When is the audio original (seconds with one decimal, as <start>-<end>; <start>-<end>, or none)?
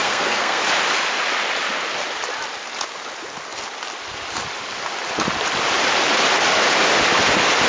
0.6-7.7